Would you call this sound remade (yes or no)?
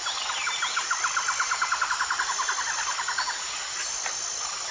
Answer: no